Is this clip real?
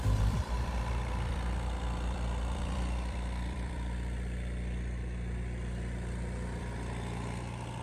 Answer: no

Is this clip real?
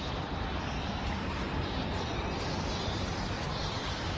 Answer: no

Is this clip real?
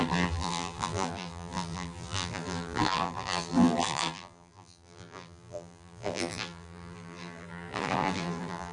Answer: no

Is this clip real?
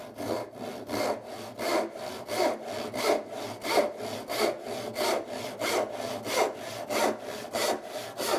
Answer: yes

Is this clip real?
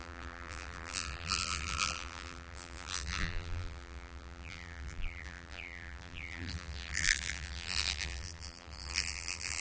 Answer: no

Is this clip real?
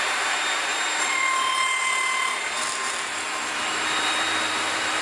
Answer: no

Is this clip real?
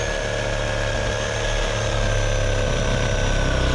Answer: yes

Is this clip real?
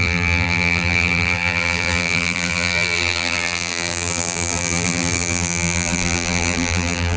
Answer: no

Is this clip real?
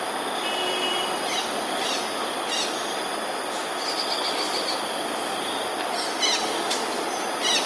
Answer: yes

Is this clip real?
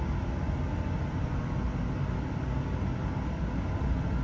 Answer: yes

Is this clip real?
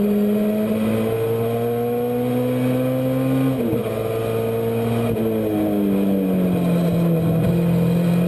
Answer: yes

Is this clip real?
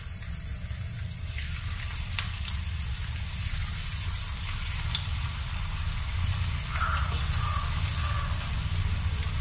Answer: no